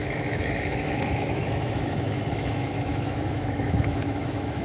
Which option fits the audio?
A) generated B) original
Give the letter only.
A